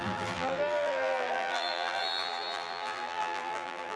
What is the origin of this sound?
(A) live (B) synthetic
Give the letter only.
B